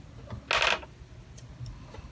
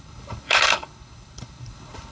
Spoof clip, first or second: second